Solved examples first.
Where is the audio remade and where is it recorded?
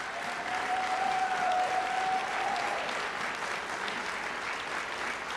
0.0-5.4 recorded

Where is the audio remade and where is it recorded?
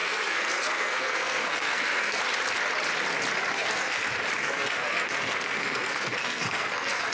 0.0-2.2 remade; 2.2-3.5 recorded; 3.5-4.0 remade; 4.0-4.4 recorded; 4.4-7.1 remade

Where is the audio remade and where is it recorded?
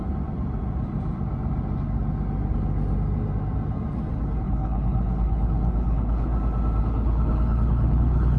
0.0-4.4 recorded; 4.4-6.3 remade; 6.3-6.8 recorded; 6.8-8.4 remade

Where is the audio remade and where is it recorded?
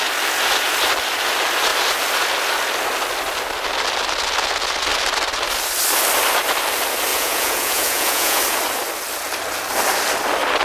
0.0-7.1 recorded; 7.1-8.4 remade; 8.4-10.6 recorded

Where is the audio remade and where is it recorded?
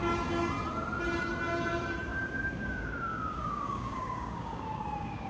0.0-2.1 recorded; 2.1-5.3 remade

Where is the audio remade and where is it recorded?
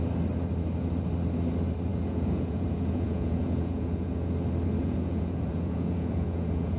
0.0-1.9 recorded; 1.9-4.1 remade; 4.1-4.8 recorded; 4.8-6.8 remade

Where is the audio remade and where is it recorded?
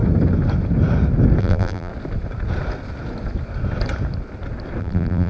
0.0-1.4 recorded; 1.4-1.9 remade; 1.9-4.8 recorded; 4.8-5.3 remade